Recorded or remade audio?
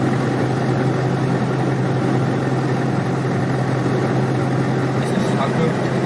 recorded